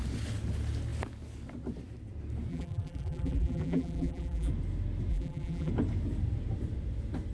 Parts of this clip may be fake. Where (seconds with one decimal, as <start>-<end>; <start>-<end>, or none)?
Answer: 2.5-4.5; 5.1-5.7